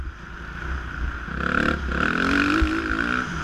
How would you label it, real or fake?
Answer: real